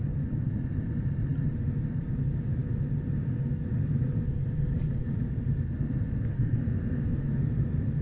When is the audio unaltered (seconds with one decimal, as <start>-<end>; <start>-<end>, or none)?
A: 0.0-6.3; 7.5-8.0